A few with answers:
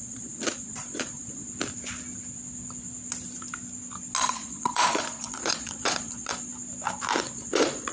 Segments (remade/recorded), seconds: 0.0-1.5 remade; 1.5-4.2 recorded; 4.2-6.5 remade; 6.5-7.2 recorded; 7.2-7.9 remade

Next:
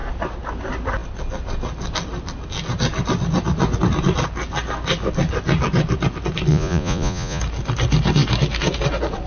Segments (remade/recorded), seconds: 0.0-6.5 recorded; 6.5-7.4 remade; 7.4-9.3 recorded

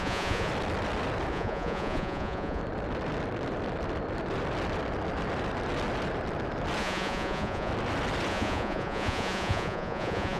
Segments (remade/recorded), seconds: 0.0-0.5 remade; 0.5-1.3 recorded; 1.3-2.6 remade; 2.6-6.8 recorded; 6.8-7.7 remade; 7.7-8.3 recorded; 8.3-10.4 remade

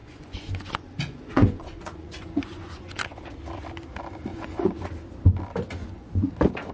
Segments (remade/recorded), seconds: 0.0-3.3 remade; 3.3-4.3 recorded; 4.3-4.9 remade; 4.9-5.8 recorded; 5.8-6.3 remade; 6.3-6.7 recorded

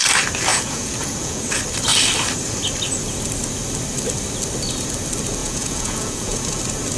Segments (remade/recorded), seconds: 0.0-0.5 recorded; 0.5-1.4 remade; 1.4-5.4 recorded; 5.4-6.6 remade; 6.6-7.0 recorded

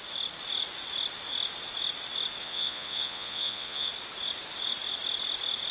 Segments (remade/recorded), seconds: 0.0-2.4 recorded; 2.4-3.9 remade; 3.9-5.7 recorded